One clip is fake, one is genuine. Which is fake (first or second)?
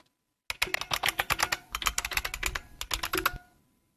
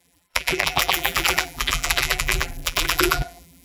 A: second